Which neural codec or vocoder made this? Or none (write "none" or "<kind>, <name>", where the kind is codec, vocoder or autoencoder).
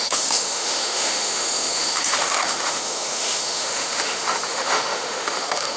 autoencoder, DAC-VAE